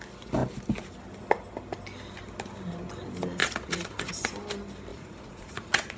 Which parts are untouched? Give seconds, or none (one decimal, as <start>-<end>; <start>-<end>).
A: 0.0-3.4; 4.1-4.9